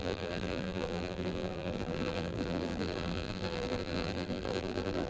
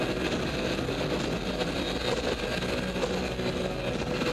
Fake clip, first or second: first